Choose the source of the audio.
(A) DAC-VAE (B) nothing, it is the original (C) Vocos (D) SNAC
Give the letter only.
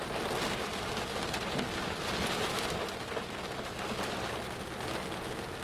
B